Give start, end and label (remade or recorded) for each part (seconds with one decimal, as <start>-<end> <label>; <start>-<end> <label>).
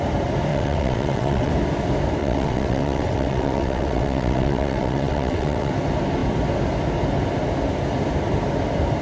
0.0-0.5 recorded; 0.5-1.5 remade; 1.5-2.2 recorded; 2.2-5.7 remade; 5.7-9.0 recorded